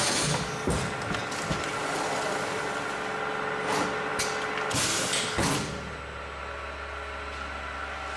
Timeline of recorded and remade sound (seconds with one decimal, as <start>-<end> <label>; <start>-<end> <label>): 0.0-8.2 recorded